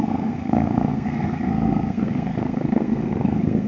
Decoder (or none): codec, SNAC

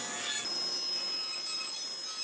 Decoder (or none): none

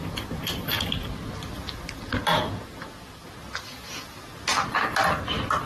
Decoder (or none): none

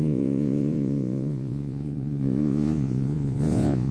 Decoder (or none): vocoder, Vocos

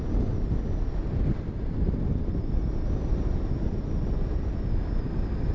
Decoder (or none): none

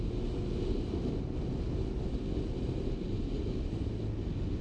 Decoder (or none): none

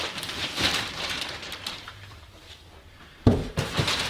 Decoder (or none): vocoder, BigVGAN v2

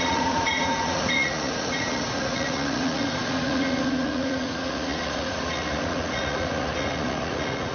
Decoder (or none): vocoder, Vocos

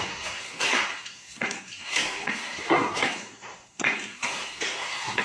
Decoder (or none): codec, SNAC